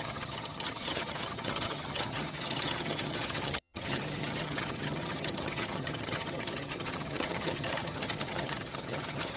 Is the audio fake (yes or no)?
yes